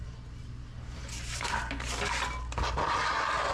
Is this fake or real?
real